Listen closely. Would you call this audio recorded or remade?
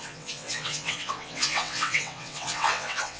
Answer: remade